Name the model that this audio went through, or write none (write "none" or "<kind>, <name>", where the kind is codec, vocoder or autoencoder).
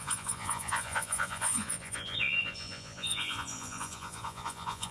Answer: vocoder, Vocos